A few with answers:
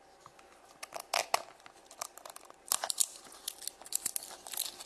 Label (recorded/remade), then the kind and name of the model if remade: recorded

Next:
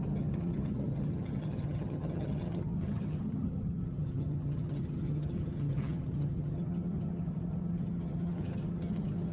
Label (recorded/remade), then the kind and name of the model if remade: remade, vocoder, HiFi-GAN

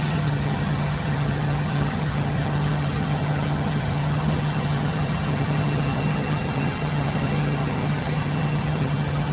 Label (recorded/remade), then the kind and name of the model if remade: remade, vocoder, HiFi-GAN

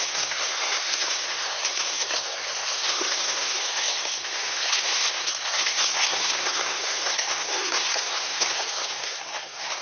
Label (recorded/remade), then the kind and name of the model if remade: remade, codec, SNAC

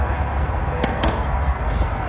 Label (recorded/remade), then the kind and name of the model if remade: remade, codec, SNAC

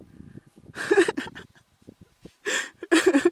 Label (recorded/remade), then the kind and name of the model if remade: recorded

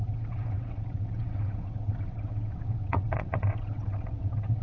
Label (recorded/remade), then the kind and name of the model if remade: remade, vocoder, WaveNeXt